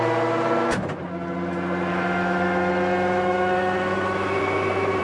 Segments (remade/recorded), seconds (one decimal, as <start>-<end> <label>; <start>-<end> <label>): 0.0-1.9 recorded; 1.9-5.0 remade

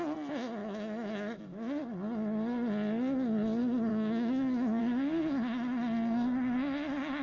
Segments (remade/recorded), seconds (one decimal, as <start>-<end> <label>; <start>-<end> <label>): 0.0-0.6 recorded; 0.6-1.4 remade; 1.4-3.9 recorded; 3.9-4.8 remade; 4.8-7.2 recorded

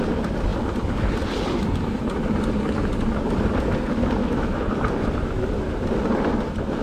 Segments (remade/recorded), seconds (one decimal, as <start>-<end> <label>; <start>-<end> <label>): 0.0-4.2 recorded; 4.2-4.7 remade; 4.7-6.8 recorded

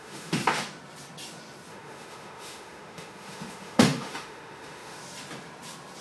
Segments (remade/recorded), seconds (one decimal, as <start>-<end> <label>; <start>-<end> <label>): 0.0-0.4 remade; 0.4-1.7 recorded; 1.7-5.0 remade; 5.0-6.0 recorded

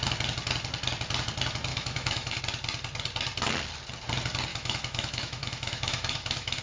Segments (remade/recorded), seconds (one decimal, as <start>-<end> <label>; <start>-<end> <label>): 0.0-1.7 recorded; 1.7-2.4 remade; 2.4-4.5 recorded; 4.5-6.6 remade